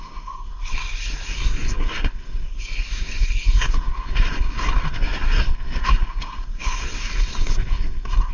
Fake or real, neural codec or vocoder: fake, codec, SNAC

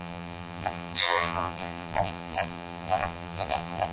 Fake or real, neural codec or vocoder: fake, vocoder, BigVGAN v2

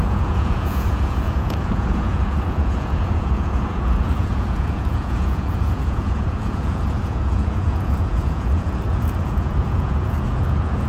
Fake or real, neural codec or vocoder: fake, vocoder, Vocos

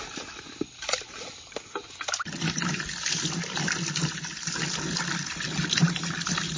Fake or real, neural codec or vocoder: real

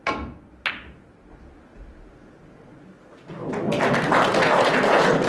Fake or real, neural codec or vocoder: real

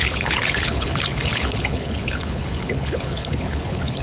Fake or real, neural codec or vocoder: fake, codec, HILCodec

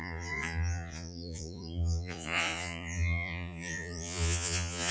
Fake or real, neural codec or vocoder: fake, vocoder, Vocos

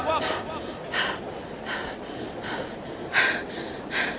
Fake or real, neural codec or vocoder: fake, vocoder, BigVGAN v2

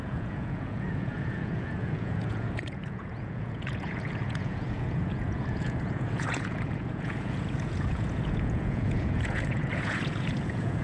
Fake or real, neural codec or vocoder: fake, vocoder, Vocos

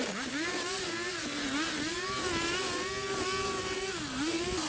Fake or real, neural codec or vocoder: real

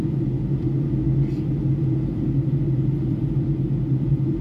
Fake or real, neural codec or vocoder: real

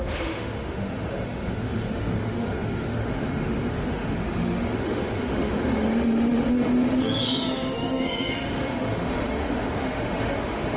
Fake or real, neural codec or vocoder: fake, autoencoder, DAC-VAE